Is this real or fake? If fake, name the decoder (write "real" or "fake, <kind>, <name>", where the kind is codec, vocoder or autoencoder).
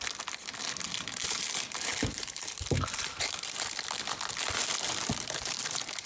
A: fake, vocoder, BigVGAN v2